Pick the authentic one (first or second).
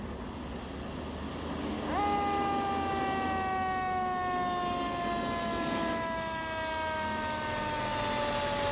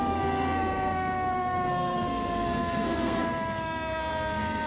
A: first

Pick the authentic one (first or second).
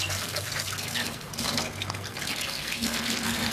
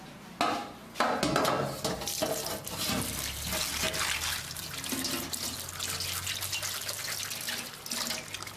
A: second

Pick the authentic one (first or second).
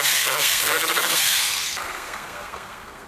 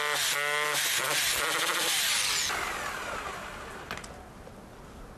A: second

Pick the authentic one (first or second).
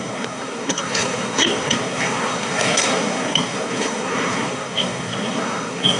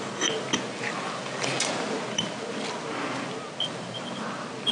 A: second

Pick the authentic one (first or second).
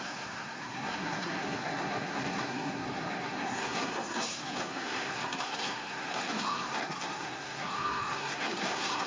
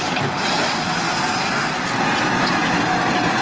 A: second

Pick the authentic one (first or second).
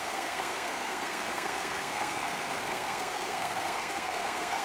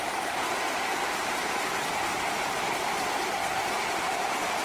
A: second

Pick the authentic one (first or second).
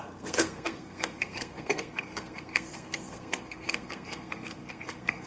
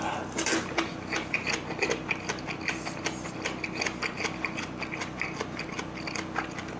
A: second